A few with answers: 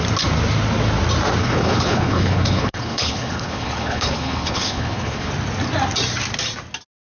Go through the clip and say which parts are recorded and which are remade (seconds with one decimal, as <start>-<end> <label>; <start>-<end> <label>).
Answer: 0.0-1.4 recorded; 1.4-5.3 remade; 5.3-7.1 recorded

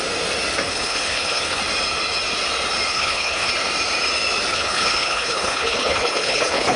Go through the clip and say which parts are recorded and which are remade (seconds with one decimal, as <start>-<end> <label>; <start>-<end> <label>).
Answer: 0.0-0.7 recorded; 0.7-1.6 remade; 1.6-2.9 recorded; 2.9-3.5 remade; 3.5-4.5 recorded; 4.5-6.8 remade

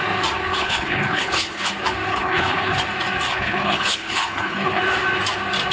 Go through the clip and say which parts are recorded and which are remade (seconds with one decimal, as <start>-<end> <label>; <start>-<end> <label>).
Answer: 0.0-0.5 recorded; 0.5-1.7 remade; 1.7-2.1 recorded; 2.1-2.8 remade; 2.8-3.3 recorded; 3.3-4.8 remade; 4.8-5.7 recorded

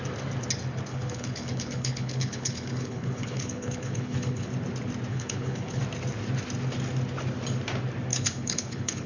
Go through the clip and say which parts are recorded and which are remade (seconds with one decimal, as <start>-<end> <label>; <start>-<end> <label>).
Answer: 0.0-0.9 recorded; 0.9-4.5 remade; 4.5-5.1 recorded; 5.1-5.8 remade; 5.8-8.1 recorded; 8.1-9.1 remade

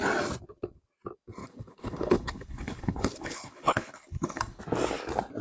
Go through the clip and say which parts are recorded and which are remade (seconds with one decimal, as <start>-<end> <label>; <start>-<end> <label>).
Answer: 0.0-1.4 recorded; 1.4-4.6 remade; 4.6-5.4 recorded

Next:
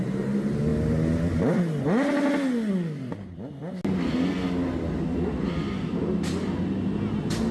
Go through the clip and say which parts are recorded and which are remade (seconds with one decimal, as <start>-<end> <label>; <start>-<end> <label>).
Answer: 0.0-7.5 recorded